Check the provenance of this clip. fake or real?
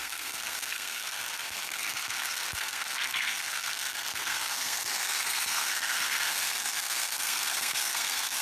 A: fake